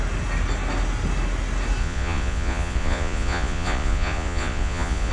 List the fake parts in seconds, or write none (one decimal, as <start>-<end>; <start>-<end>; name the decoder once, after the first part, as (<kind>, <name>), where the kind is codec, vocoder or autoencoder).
1.8-5.1 (vocoder, Vocos)